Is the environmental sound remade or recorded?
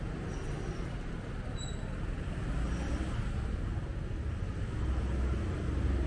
recorded